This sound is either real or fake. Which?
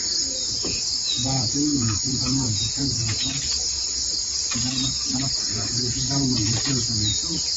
fake